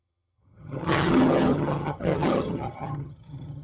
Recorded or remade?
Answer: remade